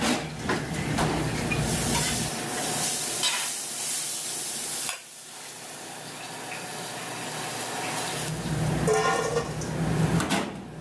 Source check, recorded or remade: recorded